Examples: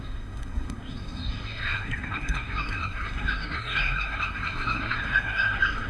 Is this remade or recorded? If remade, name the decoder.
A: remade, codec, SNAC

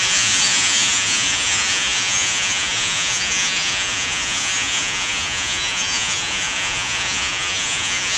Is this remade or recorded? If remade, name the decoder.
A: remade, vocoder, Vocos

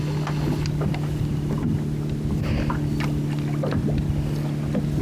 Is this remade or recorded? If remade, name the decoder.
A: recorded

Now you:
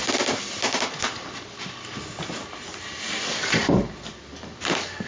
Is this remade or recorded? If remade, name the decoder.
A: recorded